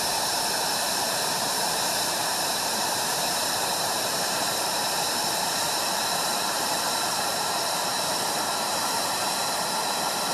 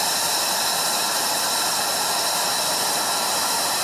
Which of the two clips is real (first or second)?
second